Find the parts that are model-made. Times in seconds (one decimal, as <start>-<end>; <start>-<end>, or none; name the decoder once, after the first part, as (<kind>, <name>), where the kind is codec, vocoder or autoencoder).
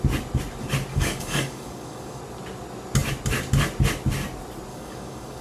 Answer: 0.9-2.2 (codec, DAC); 4.7-5.4